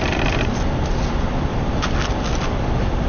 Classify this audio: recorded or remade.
recorded